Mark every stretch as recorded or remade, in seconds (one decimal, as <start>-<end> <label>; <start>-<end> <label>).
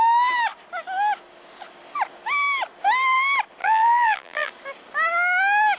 0.0-3.6 recorded; 3.6-4.5 remade; 4.5-5.8 recorded